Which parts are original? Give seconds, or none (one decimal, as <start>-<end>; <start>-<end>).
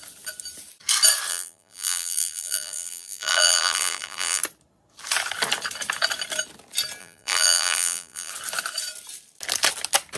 0.0-1.3; 4.4-7.0; 8.3-10.2